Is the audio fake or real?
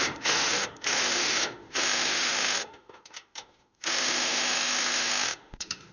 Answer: fake